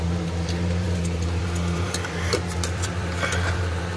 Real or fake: fake